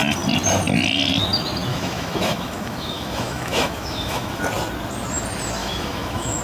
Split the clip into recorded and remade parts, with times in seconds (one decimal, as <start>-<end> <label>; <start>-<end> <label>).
0.0-1.7 recorded; 1.7-4.4 remade; 4.4-5.6 recorded; 5.6-6.4 remade